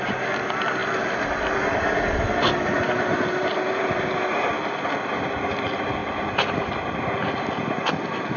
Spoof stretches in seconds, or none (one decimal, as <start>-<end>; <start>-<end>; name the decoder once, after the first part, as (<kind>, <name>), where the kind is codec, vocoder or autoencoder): 6.0-6.7 (vocoder, BigVGAN v2)